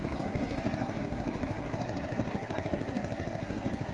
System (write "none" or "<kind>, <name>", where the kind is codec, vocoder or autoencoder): codec, SNAC